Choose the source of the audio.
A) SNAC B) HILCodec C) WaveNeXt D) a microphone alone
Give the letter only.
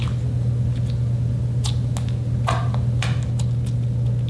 D